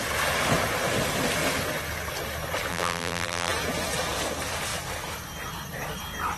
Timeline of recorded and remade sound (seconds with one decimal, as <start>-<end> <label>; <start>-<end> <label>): 0.0-2.7 recorded; 2.7-3.5 remade; 3.5-6.4 recorded

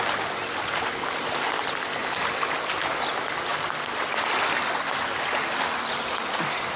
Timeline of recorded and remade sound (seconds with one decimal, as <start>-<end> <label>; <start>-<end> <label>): 0.0-6.8 recorded

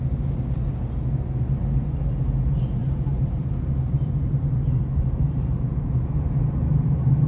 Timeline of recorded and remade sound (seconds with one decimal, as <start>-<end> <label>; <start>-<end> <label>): 0.0-2.8 recorded; 2.8-5.2 remade; 5.2-7.3 recorded